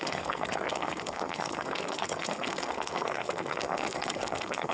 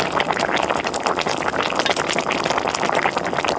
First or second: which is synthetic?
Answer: first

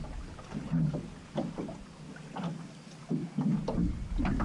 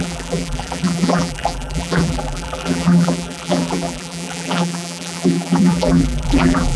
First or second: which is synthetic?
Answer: second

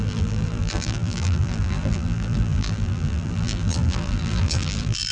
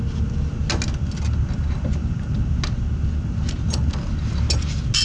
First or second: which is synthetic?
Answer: first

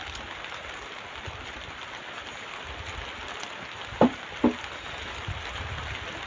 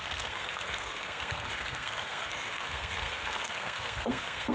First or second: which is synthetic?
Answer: second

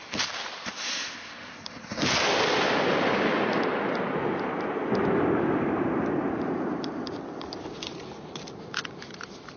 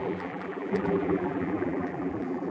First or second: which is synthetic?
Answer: second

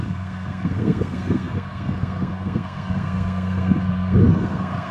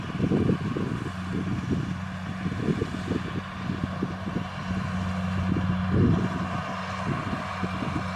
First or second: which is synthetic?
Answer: first